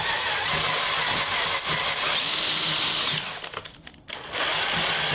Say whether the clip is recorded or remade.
recorded